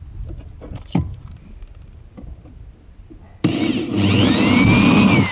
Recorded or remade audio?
recorded